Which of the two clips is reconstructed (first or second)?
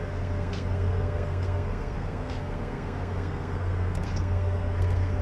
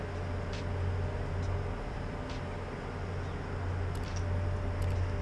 first